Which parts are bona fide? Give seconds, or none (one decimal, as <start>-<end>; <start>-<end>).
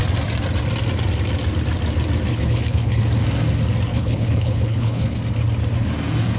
0.0-2.3; 3.0-3.9; 5.2-6.4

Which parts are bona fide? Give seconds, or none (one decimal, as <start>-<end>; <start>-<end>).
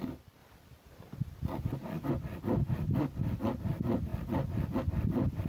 0.4-2.1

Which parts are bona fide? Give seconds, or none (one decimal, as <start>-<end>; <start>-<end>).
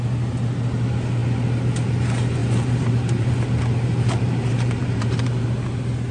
0.0-2.4; 3.3-3.9; 5.5-6.1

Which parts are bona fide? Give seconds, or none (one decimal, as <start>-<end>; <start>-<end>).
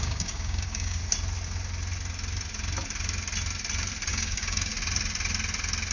1.0-4.1; 4.7-5.9